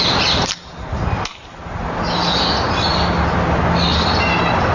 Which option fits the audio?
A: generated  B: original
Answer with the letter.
B